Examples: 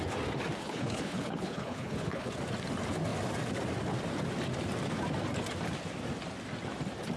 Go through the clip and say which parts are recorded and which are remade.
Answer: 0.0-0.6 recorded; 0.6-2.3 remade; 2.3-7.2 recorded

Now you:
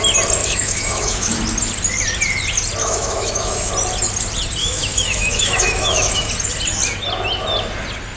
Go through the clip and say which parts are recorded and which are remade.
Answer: 0.0-0.4 recorded; 0.4-1.4 remade; 1.4-2.8 recorded; 2.8-3.7 remade; 3.7-4.6 recorded; 4.6-6.3 remade; 6.3-8.2 recorded

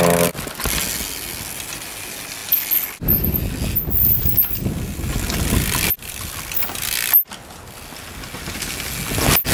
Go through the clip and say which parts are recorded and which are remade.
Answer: 0.0-9.5 recorded

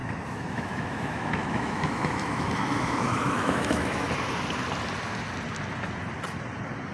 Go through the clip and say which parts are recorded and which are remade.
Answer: 0.0-4.1 remade; 4.1-6.9 recorded

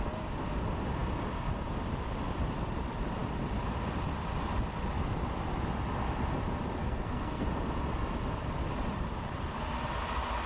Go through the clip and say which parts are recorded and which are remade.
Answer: 0.0-6.8 recorded; 6.8-7.5 remade; 7.5-10.5 recorded

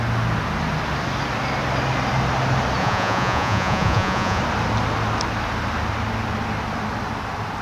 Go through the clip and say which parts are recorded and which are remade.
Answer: 0.0-2.8 recorded; 2.8-4.4 remade; 4.4-7.6 recorded